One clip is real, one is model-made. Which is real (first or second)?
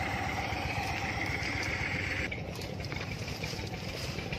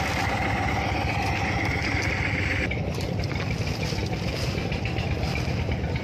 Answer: second